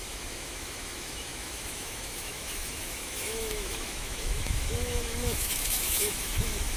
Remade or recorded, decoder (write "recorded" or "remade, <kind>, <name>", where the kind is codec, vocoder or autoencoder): remade, autoencoder, DAC-VAE